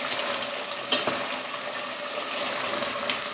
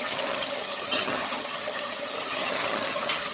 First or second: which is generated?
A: second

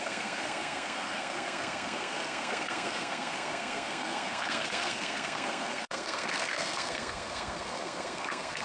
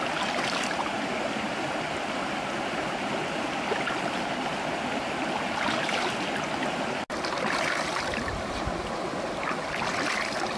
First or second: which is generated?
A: first